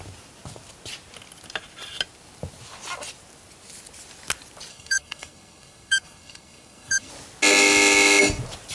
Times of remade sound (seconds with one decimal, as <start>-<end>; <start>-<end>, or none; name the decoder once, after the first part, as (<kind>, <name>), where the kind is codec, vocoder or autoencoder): 4.7-7.1 (codec, SNAC)